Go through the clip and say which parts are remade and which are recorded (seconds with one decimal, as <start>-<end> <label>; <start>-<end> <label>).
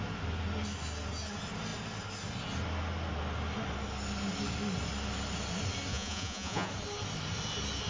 0.0-5.9 recorded; 5.9-6.7 remade; 6.7-7.9 recorded